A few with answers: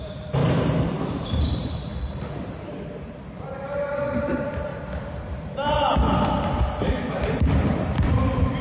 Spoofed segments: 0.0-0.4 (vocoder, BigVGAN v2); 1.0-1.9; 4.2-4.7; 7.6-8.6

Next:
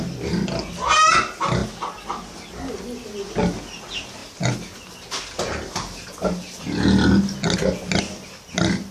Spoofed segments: none

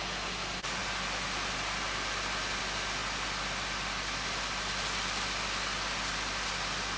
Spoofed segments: none

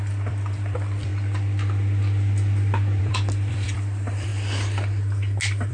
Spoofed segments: 0.0-1.1 (vocoder, BigVGAN v2); 3.0-4.3

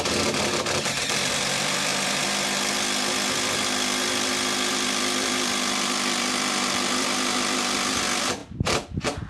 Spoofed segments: 0.0-1.9 (vocoder, BigVGAN v2); 4.7-8.4

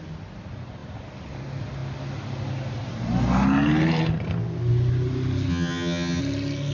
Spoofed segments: 5.5-6.2 (vocoder, HiFi-GAN)

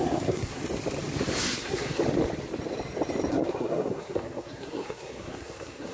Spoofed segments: 0.0-0.6 (codec, SNAC); 1.4-2.0; 3.3-5.9

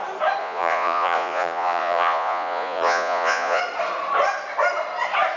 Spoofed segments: 0.4-3.6 (vocoder, Vocos)